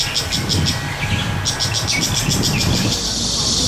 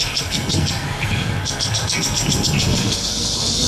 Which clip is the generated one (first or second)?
second